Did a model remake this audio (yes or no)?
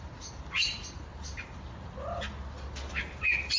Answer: no